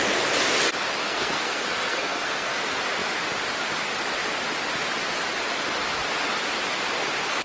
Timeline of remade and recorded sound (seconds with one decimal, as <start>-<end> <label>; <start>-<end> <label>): 0.0-1.0 recorded; 1.0-2.6 remade; 2.6-7.4 recorded

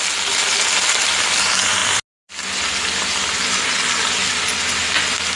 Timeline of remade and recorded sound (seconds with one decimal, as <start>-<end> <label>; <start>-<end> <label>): 0.0-5.4 recorded

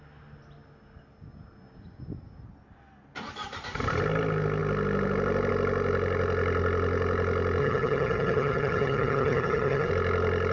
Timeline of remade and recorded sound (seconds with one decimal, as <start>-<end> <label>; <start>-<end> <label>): 0.0-7.6 recorded; 7.6-9.9 remade; 9.9-10.5 recorded

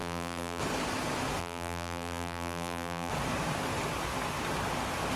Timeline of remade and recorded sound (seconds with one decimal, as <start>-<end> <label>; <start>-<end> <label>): 0.0-0.6 remade; 0.6-1.4 recorded; 1.4-3.1 remade; 3.1-5.2 recorded

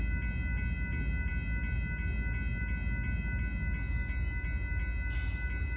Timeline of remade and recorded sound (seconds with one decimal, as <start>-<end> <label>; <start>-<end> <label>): 0.0-5.8 recorded

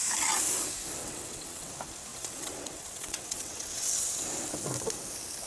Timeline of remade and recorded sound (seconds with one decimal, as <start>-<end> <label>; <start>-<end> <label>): 0.0-1.0 recorded; 1.0-1.7 remade; 1.7-2.1 recorded; 2.1-4.2 remade; 4.2-5.5 recorded

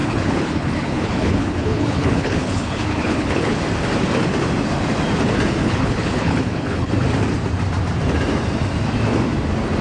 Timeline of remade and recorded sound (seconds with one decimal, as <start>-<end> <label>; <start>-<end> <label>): 0.0-3.6 remade; 3.6-5.6 recorded; 5.6-6.9 remade; 6.9-9.8 recorded

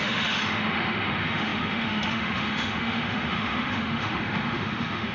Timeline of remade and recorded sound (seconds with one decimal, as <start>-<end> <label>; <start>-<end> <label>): 0.0-5.1 remade